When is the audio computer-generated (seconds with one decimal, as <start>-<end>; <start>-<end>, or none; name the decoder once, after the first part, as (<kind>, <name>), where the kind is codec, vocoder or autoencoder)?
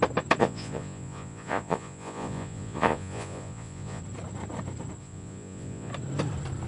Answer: 0.4-4.0 (vocoder, Vocos); 5.0-5.9